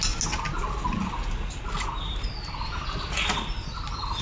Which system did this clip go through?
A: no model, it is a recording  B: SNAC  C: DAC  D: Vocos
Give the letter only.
A